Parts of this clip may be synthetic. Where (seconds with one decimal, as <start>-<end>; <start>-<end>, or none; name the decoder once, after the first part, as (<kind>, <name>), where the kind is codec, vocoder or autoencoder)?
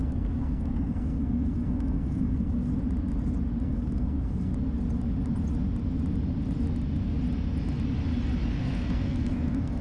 0.0-2.7 (codec, SNAC); 3.6-4.5; 8.6-9.8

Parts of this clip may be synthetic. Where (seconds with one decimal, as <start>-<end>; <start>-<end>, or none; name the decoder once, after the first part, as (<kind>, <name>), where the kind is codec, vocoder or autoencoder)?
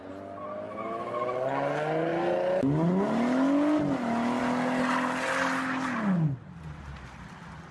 none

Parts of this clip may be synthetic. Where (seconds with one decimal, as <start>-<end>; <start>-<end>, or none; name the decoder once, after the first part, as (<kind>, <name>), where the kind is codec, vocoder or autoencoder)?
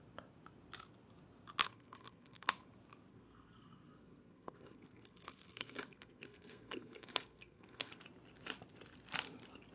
1.6-2.5 (codec, SNAC); 3.1-8.0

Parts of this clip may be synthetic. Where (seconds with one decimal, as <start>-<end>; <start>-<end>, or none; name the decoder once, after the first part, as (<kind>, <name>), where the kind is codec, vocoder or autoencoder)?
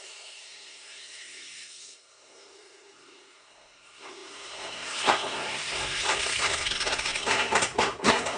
0.0-8.4 (codec, SNAC)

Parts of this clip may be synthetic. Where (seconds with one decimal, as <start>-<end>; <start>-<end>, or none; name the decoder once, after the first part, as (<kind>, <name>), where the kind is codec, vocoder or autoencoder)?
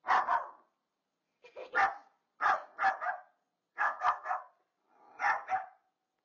3.7-4.4 (codec, SNAC)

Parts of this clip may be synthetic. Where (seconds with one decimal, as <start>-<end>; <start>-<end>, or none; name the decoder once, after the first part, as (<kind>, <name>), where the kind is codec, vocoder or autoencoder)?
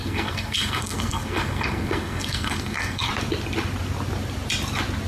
0.0-3.1 (codec, SNAC)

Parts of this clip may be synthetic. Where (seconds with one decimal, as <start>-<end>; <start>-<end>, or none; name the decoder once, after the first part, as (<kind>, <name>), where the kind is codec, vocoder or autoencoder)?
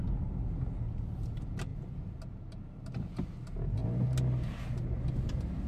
none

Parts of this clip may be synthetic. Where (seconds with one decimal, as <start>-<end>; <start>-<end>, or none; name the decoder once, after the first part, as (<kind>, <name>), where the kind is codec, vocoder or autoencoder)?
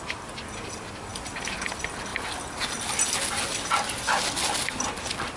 none